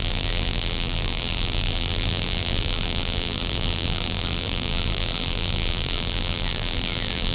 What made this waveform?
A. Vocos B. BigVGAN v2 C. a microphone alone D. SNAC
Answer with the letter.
B